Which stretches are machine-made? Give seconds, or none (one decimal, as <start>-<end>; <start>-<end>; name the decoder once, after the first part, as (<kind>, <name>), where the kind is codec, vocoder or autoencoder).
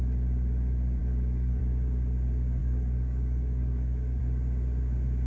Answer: 1.0-1.6 (codec, DAC); 2.6-4.2